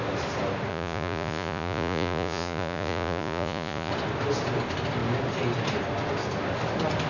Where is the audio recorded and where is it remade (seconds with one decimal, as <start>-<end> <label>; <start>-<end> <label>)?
0.0-0.7 recorded; 0.7-3.9 remade; 3.9-7.1 recorded